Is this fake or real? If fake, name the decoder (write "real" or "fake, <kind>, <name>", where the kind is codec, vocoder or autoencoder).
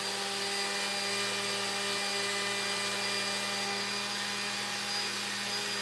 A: real